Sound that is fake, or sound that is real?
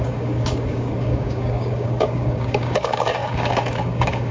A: fake